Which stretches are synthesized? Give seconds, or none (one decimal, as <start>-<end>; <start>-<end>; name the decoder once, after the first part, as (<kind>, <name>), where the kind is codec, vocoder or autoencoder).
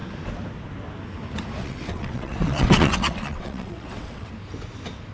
1.6-4.3 (vocoder, WaveNeXt)